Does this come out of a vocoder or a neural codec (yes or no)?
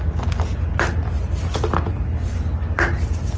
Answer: no